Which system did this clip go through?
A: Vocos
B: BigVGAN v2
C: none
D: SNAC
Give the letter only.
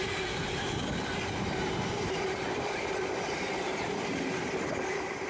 C